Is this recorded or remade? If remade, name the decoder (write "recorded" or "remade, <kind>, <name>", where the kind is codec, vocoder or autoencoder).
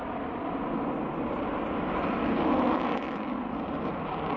recorded